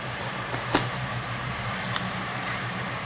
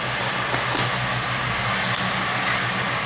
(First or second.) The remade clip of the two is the first